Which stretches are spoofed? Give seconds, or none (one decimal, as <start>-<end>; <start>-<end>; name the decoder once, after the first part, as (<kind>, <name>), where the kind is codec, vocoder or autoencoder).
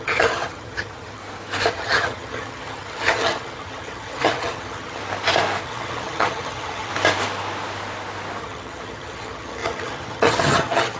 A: 0.0-1.2 (vocoder, HiFi-GAN); 1.7-5.0; 5.6-6.9; 8.4-11.0